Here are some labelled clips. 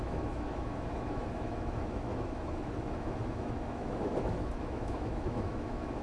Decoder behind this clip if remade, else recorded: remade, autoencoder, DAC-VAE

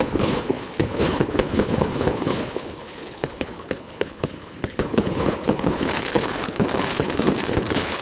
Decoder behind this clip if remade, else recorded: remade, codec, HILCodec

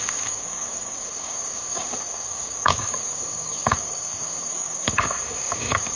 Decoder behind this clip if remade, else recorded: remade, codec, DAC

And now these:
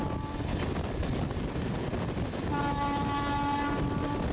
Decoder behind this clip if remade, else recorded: recorded